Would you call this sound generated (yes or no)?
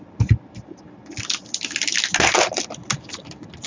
no